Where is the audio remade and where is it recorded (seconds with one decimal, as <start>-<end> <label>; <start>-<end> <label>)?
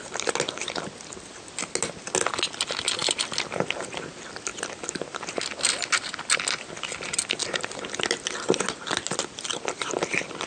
0.0-10.5 recorded